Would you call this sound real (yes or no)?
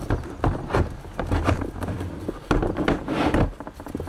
yes